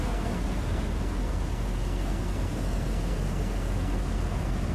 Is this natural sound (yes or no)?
no